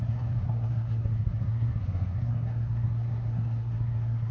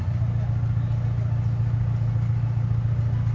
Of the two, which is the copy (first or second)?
first